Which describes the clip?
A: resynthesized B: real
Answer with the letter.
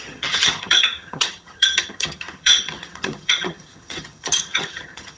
A